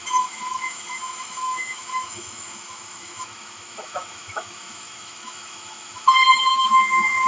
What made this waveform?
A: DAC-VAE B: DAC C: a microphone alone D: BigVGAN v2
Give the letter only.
A